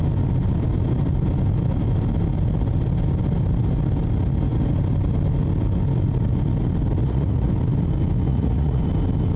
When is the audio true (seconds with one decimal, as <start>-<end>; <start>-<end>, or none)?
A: 0.0-7.0; 7.5-8.3; 8.8-9.4